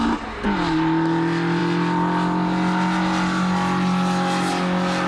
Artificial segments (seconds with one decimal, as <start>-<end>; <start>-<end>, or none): none